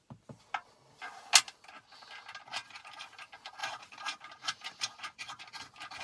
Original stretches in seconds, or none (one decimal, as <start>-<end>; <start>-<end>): 0.0-2.6; 3.2-3.6; 5.4-6.0